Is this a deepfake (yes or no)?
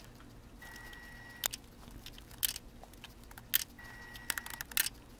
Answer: no